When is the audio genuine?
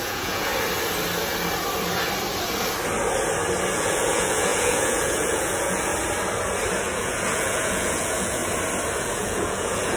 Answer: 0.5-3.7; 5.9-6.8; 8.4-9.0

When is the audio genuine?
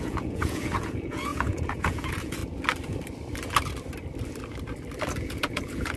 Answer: 2.4-5.2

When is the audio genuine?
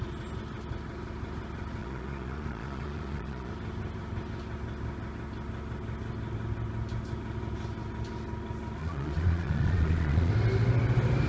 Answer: 0.0-1.8; 3.5-8.8; 10.3-11.3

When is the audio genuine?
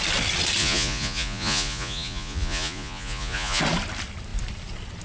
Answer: 0.0-0.6; 3.6-5.0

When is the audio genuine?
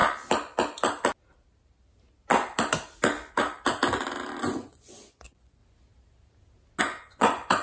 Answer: 0.0-4.4; 5.6-6.8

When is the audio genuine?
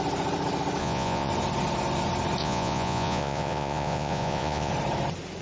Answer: 0.0-0.8; 1.3-2.4; 4.7-5.4